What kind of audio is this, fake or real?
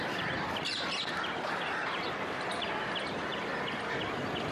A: real